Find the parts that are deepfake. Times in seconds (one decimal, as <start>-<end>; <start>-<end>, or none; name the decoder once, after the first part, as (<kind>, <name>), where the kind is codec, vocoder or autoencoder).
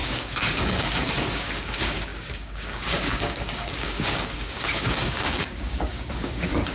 0.0-6.7 (codec, DAC)